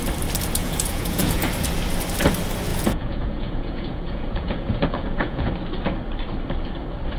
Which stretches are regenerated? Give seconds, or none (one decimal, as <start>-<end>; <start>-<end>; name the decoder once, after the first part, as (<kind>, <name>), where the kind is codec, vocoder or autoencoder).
0.6-1.4 (vocoder, Vocos); 2.7-5.5